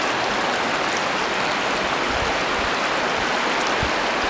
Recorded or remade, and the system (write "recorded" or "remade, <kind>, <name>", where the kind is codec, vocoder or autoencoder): recorded